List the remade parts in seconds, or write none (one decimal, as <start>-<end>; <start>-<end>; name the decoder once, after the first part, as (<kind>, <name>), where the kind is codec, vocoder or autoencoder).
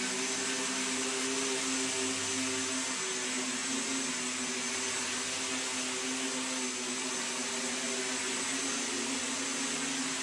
none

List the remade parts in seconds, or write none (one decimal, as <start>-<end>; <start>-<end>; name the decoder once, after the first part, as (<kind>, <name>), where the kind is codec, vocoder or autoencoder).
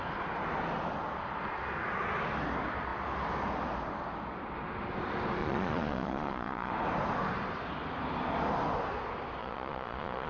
5.4-6.7 (vocoder, Vocos); 9.4-10.3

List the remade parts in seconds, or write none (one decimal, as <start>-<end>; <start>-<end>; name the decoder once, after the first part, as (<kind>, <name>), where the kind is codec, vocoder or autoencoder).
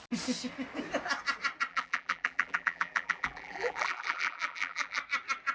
1.7-5.0 (vocoder, BigVGAN v2)